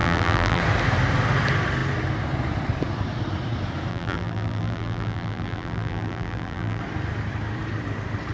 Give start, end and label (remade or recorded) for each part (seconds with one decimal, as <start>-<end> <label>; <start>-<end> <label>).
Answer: 0.0-0.6 remade; 0.6-3.9 recorded; 3.9-6.8 remade; 6.8-8.3 recorded